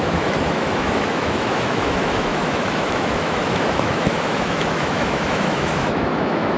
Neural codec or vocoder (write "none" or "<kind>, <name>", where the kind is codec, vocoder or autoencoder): autoencoder, DAC-VAE